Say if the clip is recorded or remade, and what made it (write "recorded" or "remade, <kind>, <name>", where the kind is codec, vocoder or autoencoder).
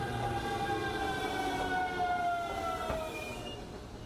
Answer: recorded